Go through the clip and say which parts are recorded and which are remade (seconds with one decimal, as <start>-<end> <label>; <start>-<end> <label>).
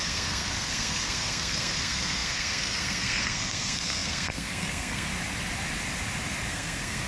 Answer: 0.0-5.1 remade; 5.1-6.5 recorded; 6.5-7.1 remade